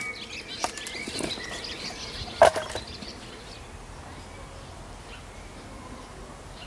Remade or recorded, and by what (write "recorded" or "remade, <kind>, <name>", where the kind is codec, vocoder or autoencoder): recorded